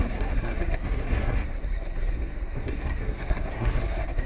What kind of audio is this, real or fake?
fake